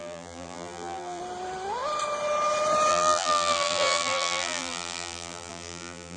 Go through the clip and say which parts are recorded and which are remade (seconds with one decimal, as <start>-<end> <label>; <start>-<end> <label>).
0.0-1.2 remade; 1.2-2.9 recorded; 2.9-6.2 remade